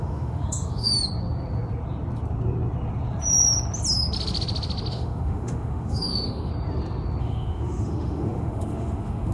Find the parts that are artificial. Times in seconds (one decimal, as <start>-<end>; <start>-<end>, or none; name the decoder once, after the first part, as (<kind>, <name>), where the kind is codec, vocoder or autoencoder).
0.0-0.9 (autoencoder, DAC-VAE); 4.9-6.5; 7.2-9.3